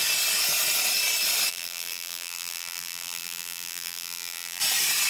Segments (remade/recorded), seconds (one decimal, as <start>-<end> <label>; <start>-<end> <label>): 0.0-1.5 recorded; 1.5-4.6 remade; 4.6-5.1 recorded

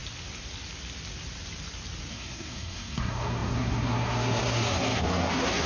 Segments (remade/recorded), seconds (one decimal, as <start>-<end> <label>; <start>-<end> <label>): 0.0-2.1 recorded; 2.1-5.7 remade

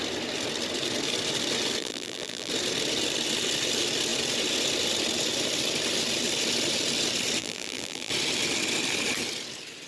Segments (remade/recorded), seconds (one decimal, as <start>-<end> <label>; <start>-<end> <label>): 0.0-1.8 recorded; 1.8-2.5 remade; 2.5-7.4 recorded; 7.4-8.1 remade; 8.1-9.9 recorded

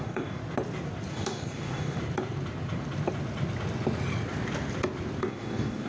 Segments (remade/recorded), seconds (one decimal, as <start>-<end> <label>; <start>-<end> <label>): 0.0-0.4 remade; 0.4-1.1 recorded; 1.1-2.0 remade; 2.0-5.2 recorded; 5.2-5.9 remade

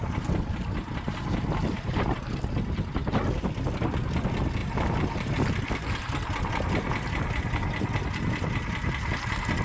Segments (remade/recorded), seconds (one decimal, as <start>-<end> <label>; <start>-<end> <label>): 0.0-1.6 recorded; 1.6-2.2 remade; 2.2-4.6 recorded; 4.6-5.3 remade; 5.3-9.6 recorded

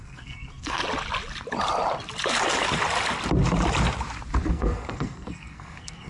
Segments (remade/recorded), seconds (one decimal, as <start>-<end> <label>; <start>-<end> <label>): 0.0-0.8 remade; 0.8-4.5 recorded; 4.5-6.1 remade

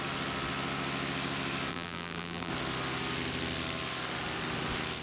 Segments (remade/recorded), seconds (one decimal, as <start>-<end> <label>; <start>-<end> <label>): 0.0-1.7 recorded; 1.7-2.5 remade; 2.5-5.0 recorded

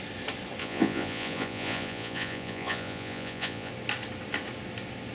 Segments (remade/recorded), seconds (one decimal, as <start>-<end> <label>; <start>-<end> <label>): 0.0-0.6 recorded; 0.6-3.7 remade; 3.7-5.1 recorded